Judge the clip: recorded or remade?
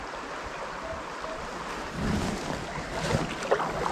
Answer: recorded